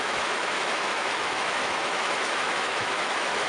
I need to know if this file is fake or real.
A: fake